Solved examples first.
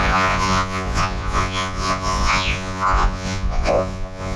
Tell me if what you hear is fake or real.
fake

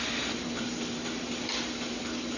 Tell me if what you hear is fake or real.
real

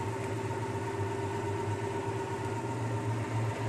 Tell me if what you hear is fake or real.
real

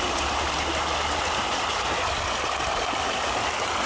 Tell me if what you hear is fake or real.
real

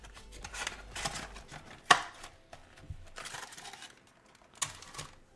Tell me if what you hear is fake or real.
real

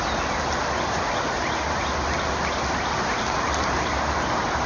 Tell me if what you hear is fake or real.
real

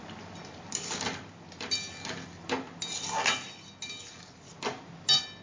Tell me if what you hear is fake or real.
real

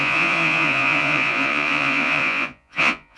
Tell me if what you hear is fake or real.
fake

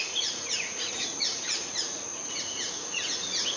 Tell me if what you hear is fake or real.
fake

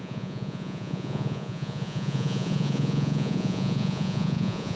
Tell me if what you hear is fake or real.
fake